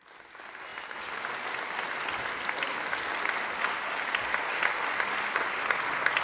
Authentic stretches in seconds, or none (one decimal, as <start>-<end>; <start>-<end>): 0.0-6.2